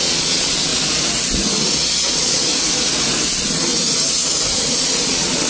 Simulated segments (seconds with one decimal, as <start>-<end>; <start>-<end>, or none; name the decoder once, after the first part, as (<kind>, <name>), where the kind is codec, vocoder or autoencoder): 0.0-0.7 (vocoder, Vocos); 2.1-2.5; 3.3-3.7; 4.5-5.5